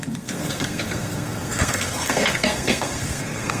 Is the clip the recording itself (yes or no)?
no